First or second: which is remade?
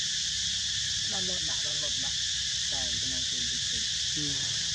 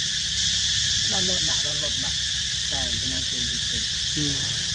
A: second